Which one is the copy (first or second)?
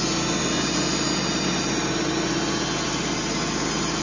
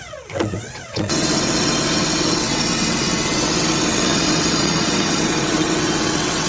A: second